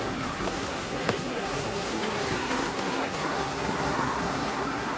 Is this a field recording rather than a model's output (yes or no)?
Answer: no